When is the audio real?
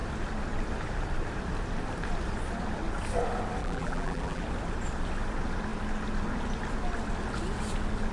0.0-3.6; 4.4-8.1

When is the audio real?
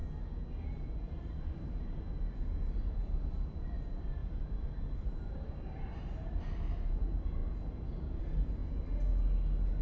0.0-0.7; 8.6-9.8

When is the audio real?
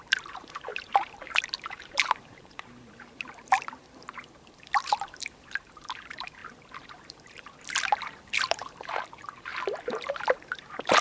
6.4-7.0; 9.5-10.1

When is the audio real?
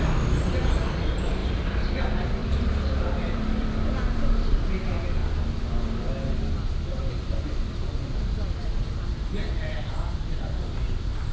0.0-1.4; 2.0-2.4; 4.5-11.3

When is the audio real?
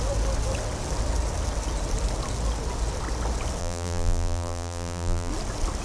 0.0-3.6; 5.3-5.8